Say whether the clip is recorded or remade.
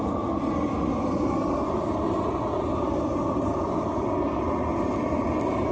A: recorded